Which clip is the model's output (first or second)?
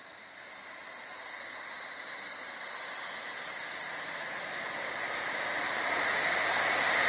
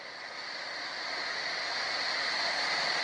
first